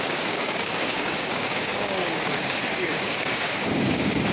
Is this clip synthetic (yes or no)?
yes